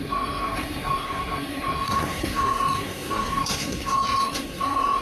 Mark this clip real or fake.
fake